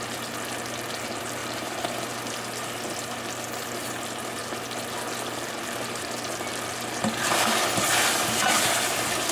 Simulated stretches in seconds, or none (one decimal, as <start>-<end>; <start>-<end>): 1.4-2.0